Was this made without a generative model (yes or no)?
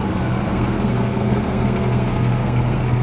no